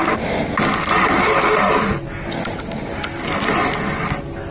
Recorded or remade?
recorded